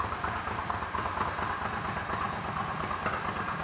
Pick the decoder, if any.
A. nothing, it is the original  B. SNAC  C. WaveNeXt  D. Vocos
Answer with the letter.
A